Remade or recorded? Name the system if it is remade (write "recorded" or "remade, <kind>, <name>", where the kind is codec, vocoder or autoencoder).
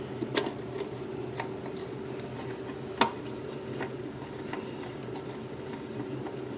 recorded